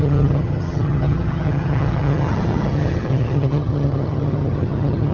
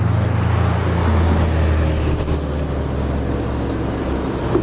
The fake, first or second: first